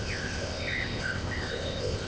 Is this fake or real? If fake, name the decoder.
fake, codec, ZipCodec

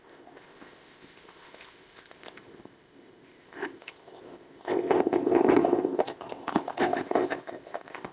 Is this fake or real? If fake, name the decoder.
fake, codec, ZipCodec